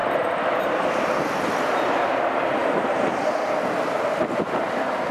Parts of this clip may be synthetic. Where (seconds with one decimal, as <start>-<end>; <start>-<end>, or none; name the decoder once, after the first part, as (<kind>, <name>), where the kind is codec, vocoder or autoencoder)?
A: 2.6-3.2 (vocoder, BigVGAN v2)